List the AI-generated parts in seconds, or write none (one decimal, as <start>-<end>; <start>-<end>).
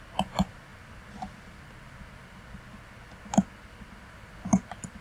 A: none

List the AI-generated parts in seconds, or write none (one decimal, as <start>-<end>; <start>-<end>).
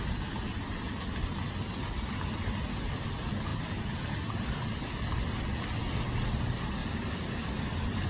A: 6.8-7.6